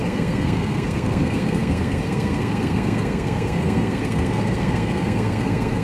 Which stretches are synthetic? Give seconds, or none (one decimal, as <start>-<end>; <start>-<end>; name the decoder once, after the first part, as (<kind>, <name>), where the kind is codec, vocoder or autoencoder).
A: 0.0-5.8 (codec, SNAC)